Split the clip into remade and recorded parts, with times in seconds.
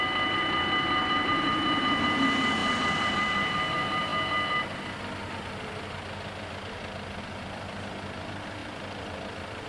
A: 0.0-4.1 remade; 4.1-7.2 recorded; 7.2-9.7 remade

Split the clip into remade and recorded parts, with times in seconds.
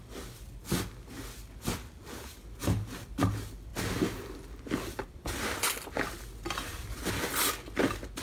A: 0.0-2.6 recorded; 2.6-3.2 remade; 3.2-8.2 recorded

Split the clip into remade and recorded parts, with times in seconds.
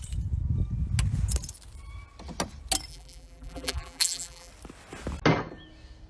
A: 0.0-2.9 recorded; 2.9-4.5 remade; 4.5-6.1 recorded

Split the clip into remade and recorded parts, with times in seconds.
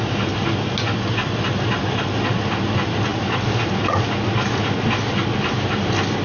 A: 0.0-3.1 recorded; 3.1-3.7 remade; 3.7-6.2 recorded